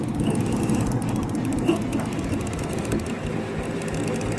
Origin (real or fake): real